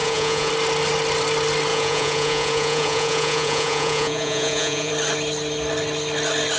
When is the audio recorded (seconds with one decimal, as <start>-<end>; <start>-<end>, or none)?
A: 0.5-1.7; 4.9-6.6